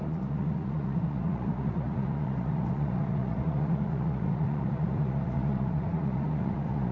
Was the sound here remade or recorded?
remade